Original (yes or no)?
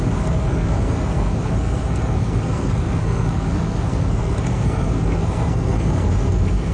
no